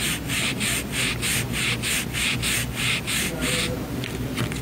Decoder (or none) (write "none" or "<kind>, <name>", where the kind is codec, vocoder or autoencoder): none